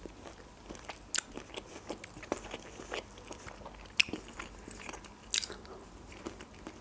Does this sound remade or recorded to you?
recorded